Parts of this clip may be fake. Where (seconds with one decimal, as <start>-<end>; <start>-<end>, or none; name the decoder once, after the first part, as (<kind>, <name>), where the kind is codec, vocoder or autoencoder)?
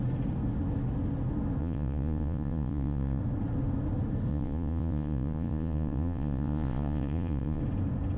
1.6-3.2 (vocoder, Vocos); 4.3-7.6